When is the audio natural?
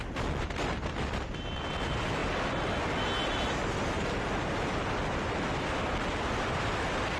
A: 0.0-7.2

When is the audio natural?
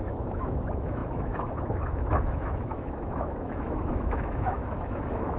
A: none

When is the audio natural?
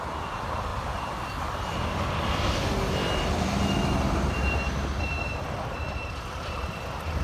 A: 0.0-7.2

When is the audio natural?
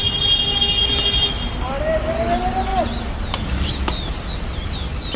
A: 0.0-5.2